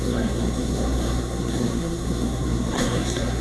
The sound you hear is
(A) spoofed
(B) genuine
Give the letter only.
A